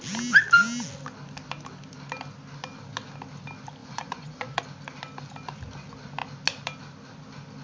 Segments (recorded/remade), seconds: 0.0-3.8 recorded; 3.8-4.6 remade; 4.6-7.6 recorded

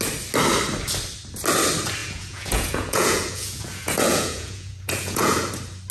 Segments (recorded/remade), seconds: 0.0-2.0 recorded; 2.0-5.5 remade; 5.5-5.9 recorded